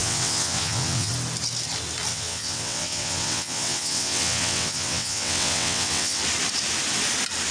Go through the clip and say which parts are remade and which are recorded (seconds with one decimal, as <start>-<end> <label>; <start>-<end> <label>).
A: 0.0-1.1 remade; 1.1-2.1 recorded; 2.1-6.2 remade; 6.2-7.5 recorded